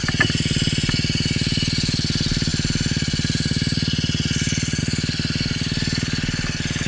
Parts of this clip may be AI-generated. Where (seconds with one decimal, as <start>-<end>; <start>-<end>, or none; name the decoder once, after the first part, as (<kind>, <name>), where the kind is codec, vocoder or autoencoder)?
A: none